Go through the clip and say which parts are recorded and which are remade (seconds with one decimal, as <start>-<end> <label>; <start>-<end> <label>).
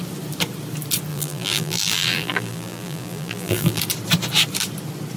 0.0-1.1 recorded; 1.1-3.8 remade; 3.8-5.2 recorded